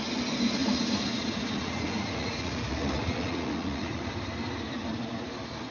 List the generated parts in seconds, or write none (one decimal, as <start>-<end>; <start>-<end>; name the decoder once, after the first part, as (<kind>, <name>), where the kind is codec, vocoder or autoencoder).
0.6-4.0 (vocoder, Vocos)